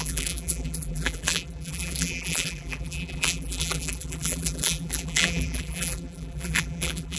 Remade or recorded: remade